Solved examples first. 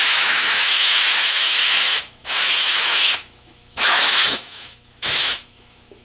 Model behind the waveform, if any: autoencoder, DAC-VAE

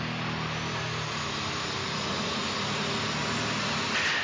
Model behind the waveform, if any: none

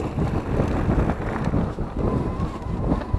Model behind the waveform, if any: none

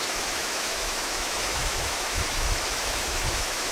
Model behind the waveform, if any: autoencoder, DAC-VAE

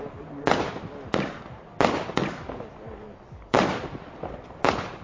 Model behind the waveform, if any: none